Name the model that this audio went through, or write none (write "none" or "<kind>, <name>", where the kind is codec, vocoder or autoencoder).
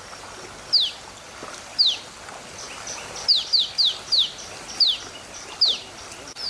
none